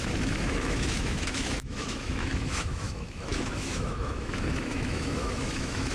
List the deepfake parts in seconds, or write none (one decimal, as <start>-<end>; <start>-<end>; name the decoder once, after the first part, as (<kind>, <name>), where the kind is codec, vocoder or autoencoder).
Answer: 0.0-5.9 (autoencoder, DAC-VAE)

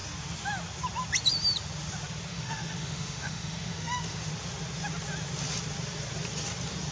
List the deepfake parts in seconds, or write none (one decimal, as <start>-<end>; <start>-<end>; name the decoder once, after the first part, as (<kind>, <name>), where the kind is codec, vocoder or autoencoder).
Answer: 2.3-4.3 (autoencoder, DAC-VAE)

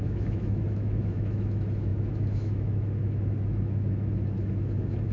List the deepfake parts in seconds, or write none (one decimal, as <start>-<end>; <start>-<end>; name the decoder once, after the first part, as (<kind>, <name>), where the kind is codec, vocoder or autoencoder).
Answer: 0.0-5.1 (autoencoder, DAC-VAE)

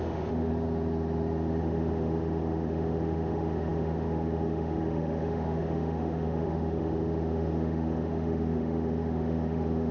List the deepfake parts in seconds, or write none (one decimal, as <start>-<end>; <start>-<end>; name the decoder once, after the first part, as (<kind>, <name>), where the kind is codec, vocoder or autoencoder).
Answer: 0.0-0.5 (autoencoder, DAC-VAE); 1.6-9.9